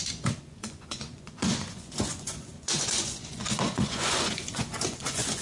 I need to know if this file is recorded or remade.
remade